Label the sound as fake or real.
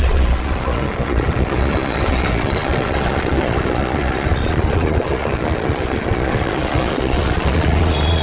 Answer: fake